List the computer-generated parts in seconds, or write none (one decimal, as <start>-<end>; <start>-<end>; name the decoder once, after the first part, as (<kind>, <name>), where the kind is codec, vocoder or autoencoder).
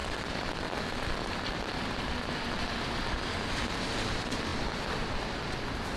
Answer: none